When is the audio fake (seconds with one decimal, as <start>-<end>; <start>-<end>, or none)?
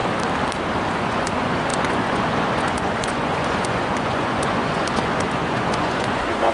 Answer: 0.9-6.5